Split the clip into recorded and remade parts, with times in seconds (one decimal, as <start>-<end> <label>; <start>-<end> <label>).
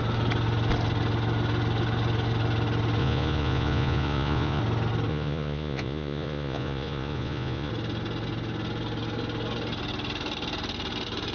0.0-3.0 recorded; 3.0-4.6 remade; 4.6-5.1 recorded; 5.1-7.7 remade; 7.7-11.3 recorded